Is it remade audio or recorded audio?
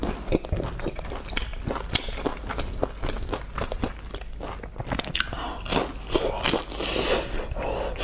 recorded